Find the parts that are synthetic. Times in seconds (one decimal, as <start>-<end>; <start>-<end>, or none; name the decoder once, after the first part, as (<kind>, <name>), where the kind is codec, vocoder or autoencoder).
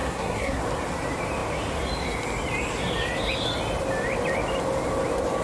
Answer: 0.0-0.6 (codec, SNAC)